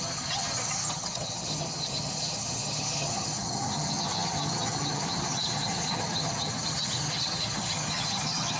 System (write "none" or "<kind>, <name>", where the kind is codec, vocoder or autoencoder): vocoder, HiFi-GAN